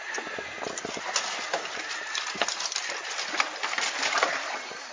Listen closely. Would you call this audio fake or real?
real